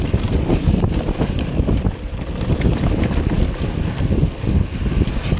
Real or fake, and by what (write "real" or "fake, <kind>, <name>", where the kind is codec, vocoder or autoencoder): real